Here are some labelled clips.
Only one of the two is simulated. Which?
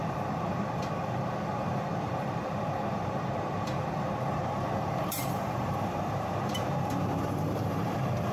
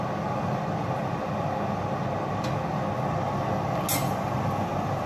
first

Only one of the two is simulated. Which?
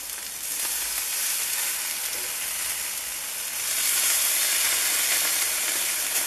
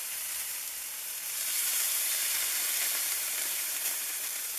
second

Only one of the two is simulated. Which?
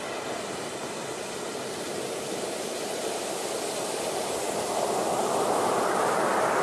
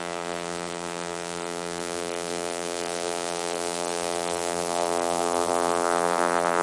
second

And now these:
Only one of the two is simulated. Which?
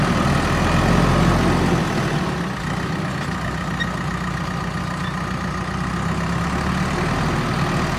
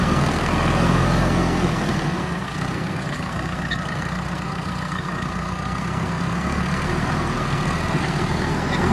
second